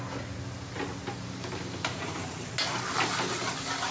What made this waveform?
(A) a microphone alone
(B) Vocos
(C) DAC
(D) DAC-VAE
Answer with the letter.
A